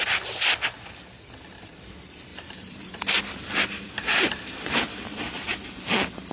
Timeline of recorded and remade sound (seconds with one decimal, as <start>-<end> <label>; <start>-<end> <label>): 0.0-2.3 recorded; 2.3-3.0 remade; 3.0-4.1 recorded; 4.1-5.5 remade; 5.5-6.3 recorded